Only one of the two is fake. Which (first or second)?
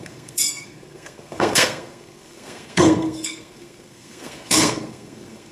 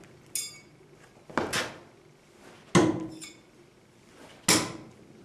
first